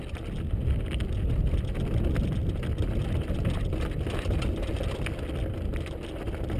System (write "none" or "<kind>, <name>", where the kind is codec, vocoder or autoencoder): none